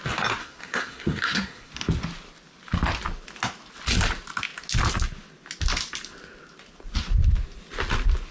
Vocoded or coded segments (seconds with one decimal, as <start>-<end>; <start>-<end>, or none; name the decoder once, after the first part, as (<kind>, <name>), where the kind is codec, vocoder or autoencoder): 0.4-1.7 (codec, SNAC)